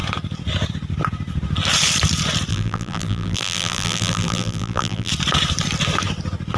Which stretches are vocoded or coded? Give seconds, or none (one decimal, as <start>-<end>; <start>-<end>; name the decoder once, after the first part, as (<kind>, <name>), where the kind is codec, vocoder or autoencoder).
2.5-5.1 (vocoder, BigVGAN v2)